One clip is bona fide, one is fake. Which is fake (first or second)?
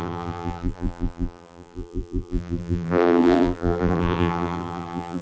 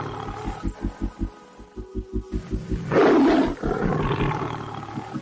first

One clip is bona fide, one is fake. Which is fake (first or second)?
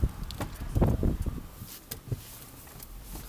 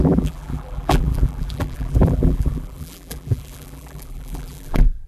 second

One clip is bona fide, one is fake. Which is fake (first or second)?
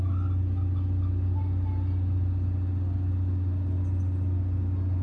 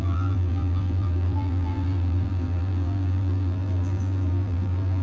second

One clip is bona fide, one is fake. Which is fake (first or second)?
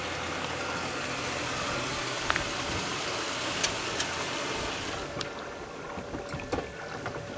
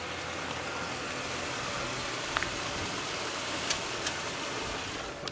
second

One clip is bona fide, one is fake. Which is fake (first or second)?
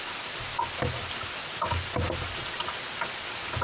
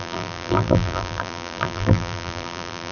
second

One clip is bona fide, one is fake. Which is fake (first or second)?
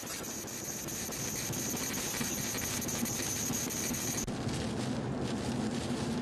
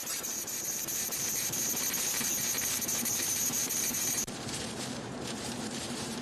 second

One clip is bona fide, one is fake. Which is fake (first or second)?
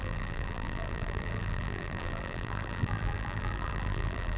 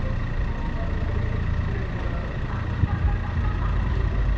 first